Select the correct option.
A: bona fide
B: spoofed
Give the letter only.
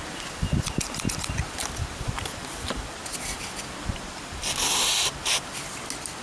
A